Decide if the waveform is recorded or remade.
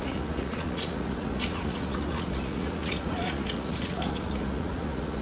remade